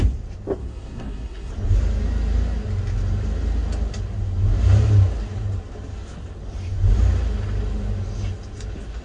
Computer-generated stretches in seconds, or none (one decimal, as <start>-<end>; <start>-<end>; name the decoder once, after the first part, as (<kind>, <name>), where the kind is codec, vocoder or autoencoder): 0.6-1.5 (codec, SNAC)